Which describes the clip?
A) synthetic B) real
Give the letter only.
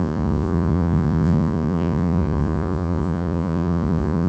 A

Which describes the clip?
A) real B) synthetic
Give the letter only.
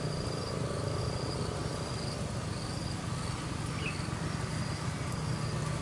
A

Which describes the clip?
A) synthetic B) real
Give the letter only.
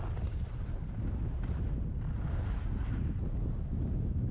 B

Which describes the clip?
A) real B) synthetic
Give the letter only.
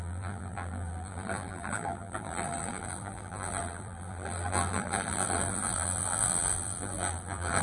B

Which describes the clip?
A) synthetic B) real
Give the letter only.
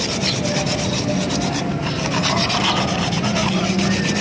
B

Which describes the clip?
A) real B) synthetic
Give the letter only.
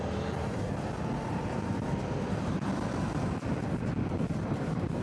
A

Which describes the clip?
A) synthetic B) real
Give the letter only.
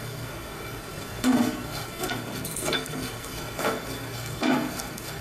A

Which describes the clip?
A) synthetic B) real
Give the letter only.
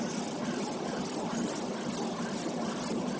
B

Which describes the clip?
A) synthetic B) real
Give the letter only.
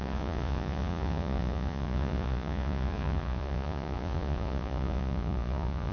A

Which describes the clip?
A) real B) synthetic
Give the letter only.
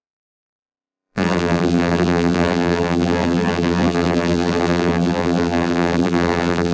B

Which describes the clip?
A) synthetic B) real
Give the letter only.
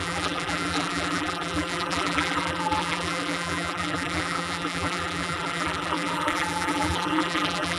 A